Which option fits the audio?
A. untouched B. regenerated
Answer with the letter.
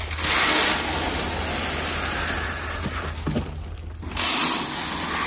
A